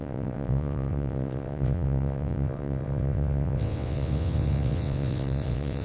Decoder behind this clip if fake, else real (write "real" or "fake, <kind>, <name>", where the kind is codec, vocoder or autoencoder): fake, vocoder, WaveNeXt